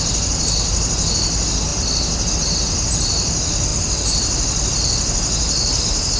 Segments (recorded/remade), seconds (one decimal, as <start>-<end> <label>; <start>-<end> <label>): 0.0-6.2 recorded